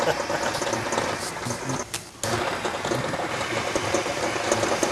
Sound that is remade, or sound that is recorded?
recorded